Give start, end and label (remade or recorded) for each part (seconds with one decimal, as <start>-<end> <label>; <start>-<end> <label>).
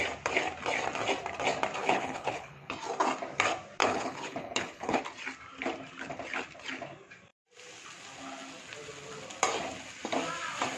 0.0-1.8 recorded; 1.8-2.7 remade; 2.7-3.8 recorded; 3.8-5.0 remade; 5.0-10.8 recorded